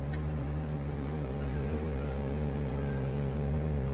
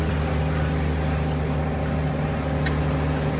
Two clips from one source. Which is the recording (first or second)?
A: second